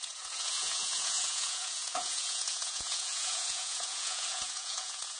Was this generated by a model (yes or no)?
yes